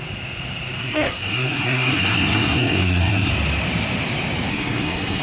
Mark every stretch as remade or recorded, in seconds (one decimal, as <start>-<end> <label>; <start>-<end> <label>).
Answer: 0.0-0.8 recorded; 0.8-3.3 remade; 3.3-4.5 recorded; 4.5-5.2 remade

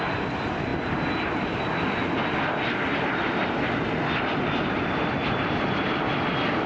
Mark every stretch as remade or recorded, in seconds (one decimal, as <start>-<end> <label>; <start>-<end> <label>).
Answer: 0.0-6.7 recorded

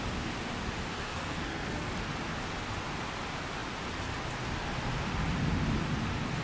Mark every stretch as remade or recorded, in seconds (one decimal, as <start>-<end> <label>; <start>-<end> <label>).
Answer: 0.0-0.9 recorded; 0.9-1.9 remade; 1.9-6.4 recorded

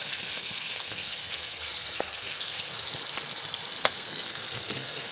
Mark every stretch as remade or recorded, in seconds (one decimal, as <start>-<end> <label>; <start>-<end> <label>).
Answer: 0.0-2.7 remade; 2.7-3.8 recorded; 3.8-5.1 remade

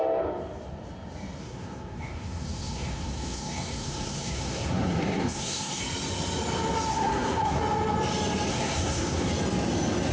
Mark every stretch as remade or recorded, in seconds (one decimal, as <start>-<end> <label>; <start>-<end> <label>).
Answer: 0.0-1.4 recorded; 1.4-5.8 remade; 5.8-6.9 recorded; 6.9-7.6 remade; 7.6-8.5 recorded; 8.5-9.3 remade; 9.3-10.1 recorded

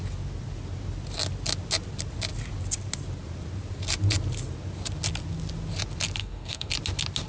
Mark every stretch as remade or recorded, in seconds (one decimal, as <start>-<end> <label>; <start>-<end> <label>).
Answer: 0.0-6.2 recorded; 6.2-6.7 remade; 6.7-7.3 recorded

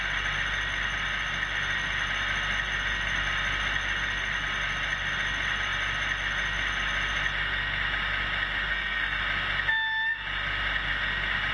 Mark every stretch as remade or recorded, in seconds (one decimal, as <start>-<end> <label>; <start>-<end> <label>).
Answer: 0.0-8.7 recorded; 8.7-9.2 remade; 9.2-11.5 recorded